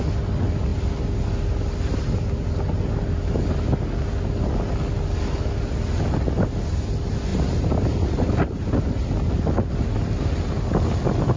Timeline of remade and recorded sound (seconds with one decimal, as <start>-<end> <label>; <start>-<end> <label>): 0.0-11.4 recorded